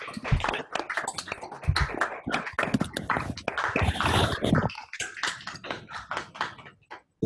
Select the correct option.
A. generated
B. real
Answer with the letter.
B